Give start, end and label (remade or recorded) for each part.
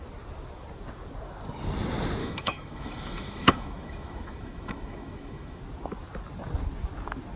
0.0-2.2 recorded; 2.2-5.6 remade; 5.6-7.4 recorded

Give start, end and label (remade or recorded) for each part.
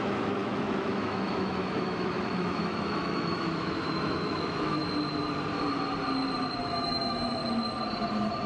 0.0-4.8 remade; 4.8-6.6 recorded; 6.6-7.4 remade; 7.4-8.5 recorded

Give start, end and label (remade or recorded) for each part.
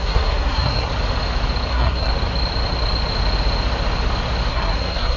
0.0-0.9 remade; 0.9-1.7 recorded; 1.7-2.1 remade; 2.1-4.5 recorded; 4.5-5.2 remade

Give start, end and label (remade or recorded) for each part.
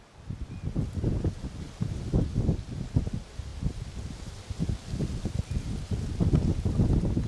0.0-7.3 recorded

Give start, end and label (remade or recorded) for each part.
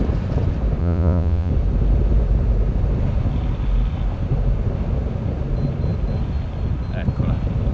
0.0-0.8 recorded; 0.8-1.5 remade; 1.5-7.7 recorded